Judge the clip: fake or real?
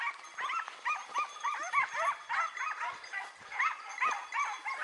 fake